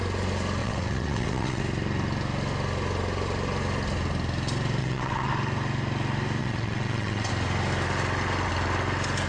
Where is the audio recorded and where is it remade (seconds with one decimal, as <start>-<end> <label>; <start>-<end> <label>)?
0.0-0.6 recorded; 0.6-1.6 remade; 1.6-4.8 recorded; 4.8-5.3 remade; 5.3-6.4 recorded; 6.4-7.3 remade; 7.3-9.3 recorded